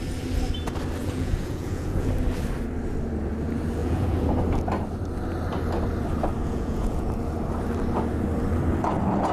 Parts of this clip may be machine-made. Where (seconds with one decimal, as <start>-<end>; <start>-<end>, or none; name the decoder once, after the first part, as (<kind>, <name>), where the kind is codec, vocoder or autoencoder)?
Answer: 1.0-2.1 (vocoder, Vocos); 3.8-4.3; 6.4-7.1

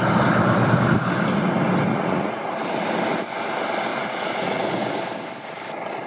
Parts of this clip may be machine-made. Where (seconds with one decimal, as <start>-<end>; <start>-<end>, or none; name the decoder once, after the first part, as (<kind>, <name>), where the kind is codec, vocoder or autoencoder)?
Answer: 1.9-2.4 (vocoder, Vocos); 3.9-4.7